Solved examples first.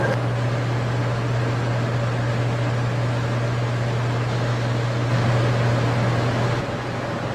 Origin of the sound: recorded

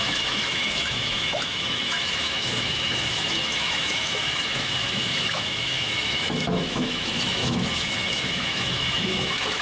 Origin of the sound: remade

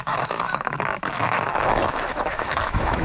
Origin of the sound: remade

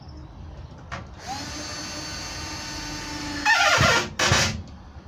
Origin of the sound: recorded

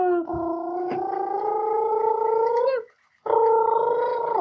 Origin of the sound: recorded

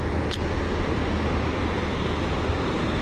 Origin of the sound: recorded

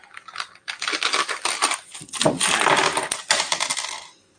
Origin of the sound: recorded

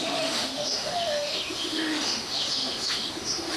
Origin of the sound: remade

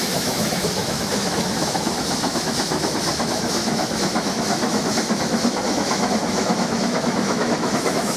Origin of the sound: remade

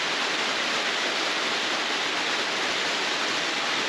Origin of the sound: recorded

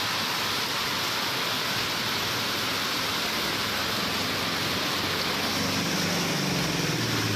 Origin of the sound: recorded